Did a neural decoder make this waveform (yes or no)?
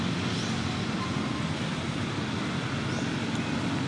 no